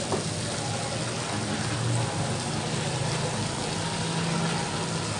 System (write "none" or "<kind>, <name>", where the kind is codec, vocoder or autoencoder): none